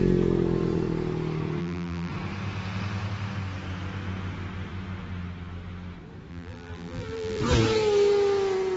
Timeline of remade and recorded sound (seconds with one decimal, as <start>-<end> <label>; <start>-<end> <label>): 0.0-1.6 recorded; 1.6-2.1 remade; 2.1-6.3 recorded; 6.3-7.4 remade; 7.4-8.8 recorded